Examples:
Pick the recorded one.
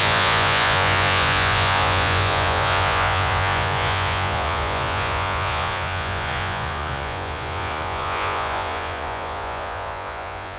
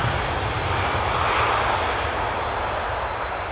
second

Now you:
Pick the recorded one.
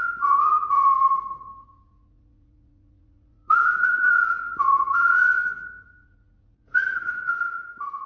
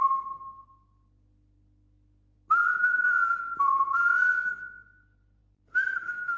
second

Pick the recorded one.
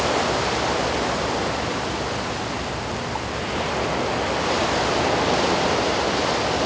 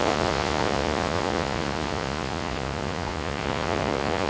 first